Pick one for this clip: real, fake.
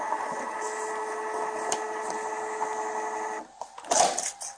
real